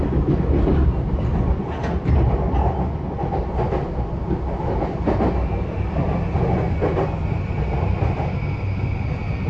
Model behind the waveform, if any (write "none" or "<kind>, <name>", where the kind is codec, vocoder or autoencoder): none